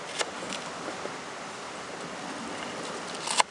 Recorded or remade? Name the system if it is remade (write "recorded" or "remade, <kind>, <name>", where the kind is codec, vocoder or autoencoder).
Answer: recorded